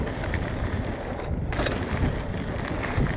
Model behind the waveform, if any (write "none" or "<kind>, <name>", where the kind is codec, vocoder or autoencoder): none